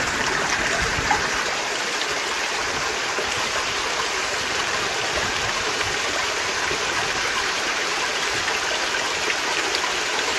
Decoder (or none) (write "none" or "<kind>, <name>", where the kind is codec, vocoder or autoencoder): vocoder, BigVGAN v2